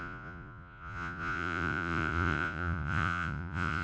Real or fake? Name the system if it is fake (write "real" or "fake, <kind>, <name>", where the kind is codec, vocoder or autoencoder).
fake, vocoder, Vocos